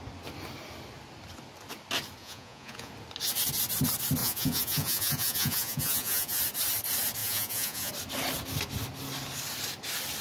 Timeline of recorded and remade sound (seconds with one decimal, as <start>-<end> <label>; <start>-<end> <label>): 0.0-2.2 recorded; 2.2-2.9 remade; 2.9-4.2 recorded; 4.2-6.4 remade; 6.4-7.2 recorded; 7.2-7.9 remade; 7.9-10.2 recorded

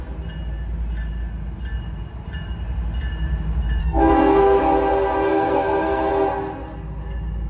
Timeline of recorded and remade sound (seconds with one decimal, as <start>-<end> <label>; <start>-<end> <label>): 0.0-3.8 recorded; 3.8-4.6 remade; 4.6-5.3 recorded; 5.3-6.1 remade; 6.1-7.5 recorded

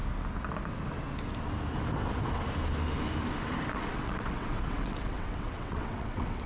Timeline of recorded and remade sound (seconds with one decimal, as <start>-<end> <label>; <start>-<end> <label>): 0.0-3.9 recorded; 3.9-6.5 remade

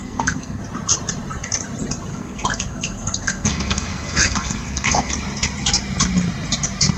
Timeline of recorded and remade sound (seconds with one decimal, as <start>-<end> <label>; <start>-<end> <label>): 0.0-0.6 remade; 0.6-2.1 recorded; 2.1-5.1 remade; 5.1-7.0 recorded

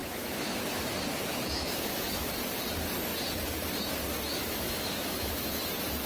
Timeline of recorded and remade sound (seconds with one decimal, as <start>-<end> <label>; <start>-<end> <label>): 0.0-0.8 remade; 0.8-1.3 recorded; 1.3-2.3 remade; 2.3-4.4 recorded; 4.4-5.6 remade; 5.6-6.1 recorded

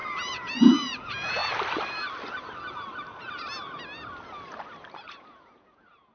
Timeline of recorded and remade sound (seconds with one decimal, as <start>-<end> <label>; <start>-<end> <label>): 0.0-1.4 remade; 1.4-5.1 recorded; 5.1-6.1 remade

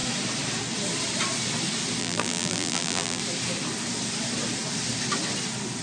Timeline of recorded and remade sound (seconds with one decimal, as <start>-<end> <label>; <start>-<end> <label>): 0.0-2.0 recorded; 2.0-3.2 remade; 3.2-5.8 recorded

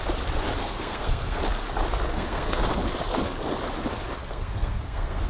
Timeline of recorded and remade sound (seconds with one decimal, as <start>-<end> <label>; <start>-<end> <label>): 0.0-0.6 recorded; 0.6-1.4 remade; 1.4-2.1 recorded; 2.1-2.7 remade; 2.7-4.2 recorded; 4.2-5.3 remade